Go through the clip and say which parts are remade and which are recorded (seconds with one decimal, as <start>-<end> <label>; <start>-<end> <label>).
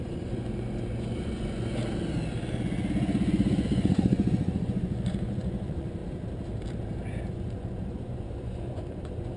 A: 0.0-1.8 remade; 1.8-2.9 recorded; 2.9-6.0 remade; 6.0-7.3 recorded; 7.3-9.4 remade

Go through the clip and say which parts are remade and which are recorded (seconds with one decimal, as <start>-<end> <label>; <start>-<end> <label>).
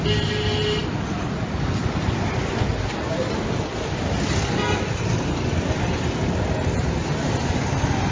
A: 0.0-8.1 recorded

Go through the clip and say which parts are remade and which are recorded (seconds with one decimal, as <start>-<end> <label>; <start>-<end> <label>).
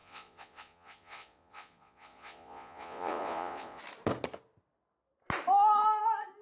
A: 0.0-3.8 remade; 3.8-6.4 recorded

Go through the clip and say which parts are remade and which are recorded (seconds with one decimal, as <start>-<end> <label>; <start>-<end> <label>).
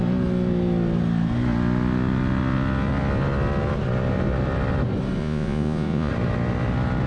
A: 0.0-5.2 recorded; 5.2-6.1 remade; 6.1-7.1 recorded